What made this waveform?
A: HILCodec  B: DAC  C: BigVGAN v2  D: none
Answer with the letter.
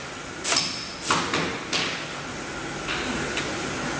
D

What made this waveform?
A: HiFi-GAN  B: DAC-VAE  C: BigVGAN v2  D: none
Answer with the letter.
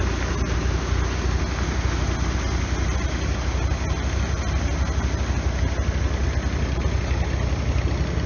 D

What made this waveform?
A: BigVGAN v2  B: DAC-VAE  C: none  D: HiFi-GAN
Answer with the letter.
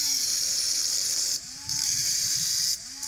A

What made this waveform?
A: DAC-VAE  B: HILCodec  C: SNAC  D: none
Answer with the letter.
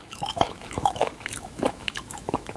A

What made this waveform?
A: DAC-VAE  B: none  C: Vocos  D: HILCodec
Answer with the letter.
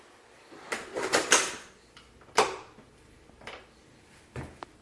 B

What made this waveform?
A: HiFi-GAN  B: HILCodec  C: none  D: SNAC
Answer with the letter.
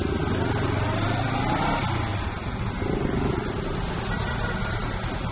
C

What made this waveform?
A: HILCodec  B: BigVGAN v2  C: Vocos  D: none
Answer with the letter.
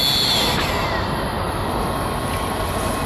D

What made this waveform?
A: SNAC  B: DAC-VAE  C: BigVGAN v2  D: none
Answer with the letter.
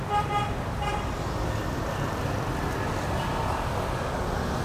D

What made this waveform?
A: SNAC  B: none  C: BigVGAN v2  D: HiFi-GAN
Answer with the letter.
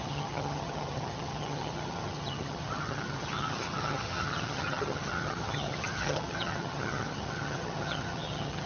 D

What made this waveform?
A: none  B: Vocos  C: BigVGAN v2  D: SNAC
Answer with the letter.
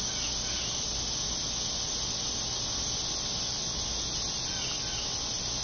A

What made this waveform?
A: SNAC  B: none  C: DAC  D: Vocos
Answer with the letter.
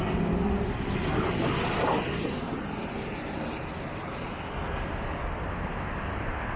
B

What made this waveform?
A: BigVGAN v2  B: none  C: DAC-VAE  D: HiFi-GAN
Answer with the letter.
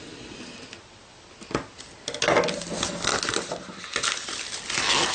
B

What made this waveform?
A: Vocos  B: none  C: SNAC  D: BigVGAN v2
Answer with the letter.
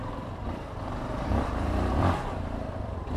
D